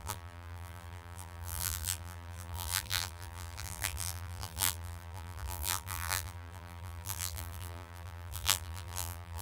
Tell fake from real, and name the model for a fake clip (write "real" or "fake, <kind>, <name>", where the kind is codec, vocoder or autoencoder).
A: fake, vocoder, BigVGAN v2